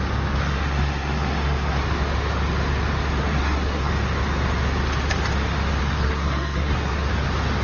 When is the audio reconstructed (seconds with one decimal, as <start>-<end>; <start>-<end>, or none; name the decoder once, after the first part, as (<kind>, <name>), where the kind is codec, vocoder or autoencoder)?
0.4-1.8 (codec, SNAC); 3.2-3.9; 5.8-7.1